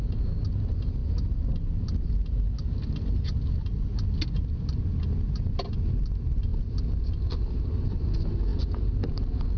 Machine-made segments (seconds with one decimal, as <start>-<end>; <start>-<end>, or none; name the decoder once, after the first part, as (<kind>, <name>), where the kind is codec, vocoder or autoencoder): none